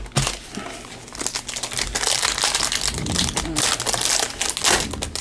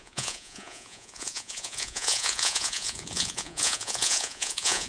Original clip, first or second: first